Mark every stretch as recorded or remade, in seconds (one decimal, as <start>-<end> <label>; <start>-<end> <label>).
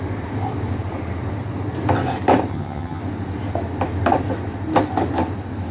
0.0-2.5 recorded; 2.5-3.0 remade; 3.0-5.7 recorded